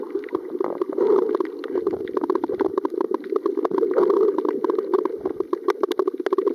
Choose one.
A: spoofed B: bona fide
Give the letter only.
B